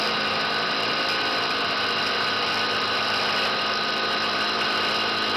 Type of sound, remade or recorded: recorded